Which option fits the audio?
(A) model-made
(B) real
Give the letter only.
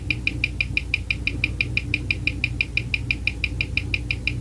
B